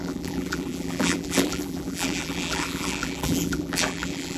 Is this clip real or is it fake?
fake